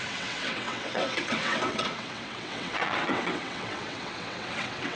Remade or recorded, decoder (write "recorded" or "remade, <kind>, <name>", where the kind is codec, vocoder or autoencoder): remade, vocoder, WaveNeXt